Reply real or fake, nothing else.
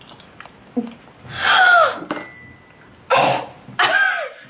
real